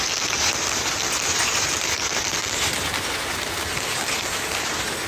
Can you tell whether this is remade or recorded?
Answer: recorded